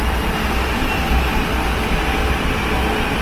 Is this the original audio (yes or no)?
yes